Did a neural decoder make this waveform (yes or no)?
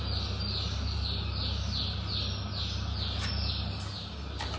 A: no